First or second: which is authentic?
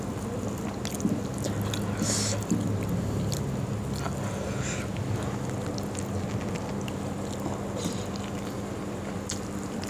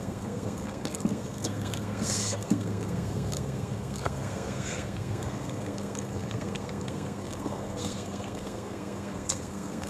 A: first